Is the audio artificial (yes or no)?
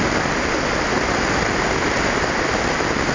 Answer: no